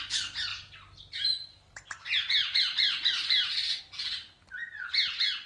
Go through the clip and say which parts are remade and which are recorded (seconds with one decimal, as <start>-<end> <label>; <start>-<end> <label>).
0.0-0.5 recorded; 0.5-3.8 remade; 3.8-5.5 recorded